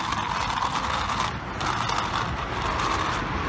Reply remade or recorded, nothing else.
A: recorded